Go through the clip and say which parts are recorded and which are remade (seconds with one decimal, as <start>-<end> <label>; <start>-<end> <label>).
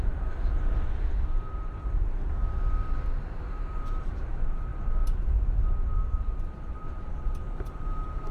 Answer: 0.0-2.4 remade; 2.4-3.2 recorded; 3.2-8.3 remade